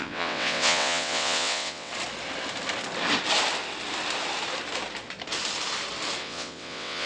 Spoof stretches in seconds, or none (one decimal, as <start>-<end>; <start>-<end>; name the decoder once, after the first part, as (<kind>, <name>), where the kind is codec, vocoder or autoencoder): 0.0-1.9 (vocoder, WaveNeXt); 6.2-7.1